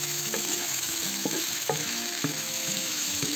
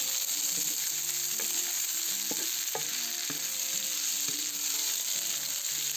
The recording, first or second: second